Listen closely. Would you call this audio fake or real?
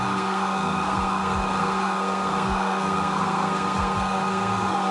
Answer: fake